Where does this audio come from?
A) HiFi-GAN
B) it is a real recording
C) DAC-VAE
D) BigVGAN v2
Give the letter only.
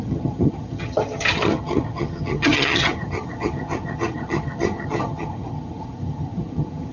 A